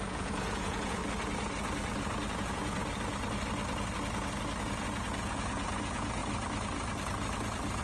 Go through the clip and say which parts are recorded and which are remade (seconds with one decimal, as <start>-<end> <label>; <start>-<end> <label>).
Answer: 0.0-1.0 remade; 1.0-2.3 recorded; 2.3-2.8 remade; 2.8-4.6 recorded; 4.6-6.2 remade; 6.2-7.8 recorded